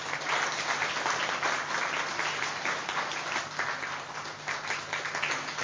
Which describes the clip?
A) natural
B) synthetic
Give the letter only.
A